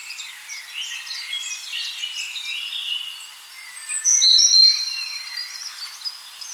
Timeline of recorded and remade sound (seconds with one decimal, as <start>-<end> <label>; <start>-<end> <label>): 0.0-2.4 remade; 2.4-4.3 recorded; 4.3-5.6 remade; 5.6-6.5 recorded